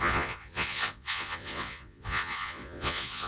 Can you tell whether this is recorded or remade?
remade